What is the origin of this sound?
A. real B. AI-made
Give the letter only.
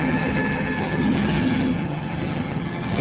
B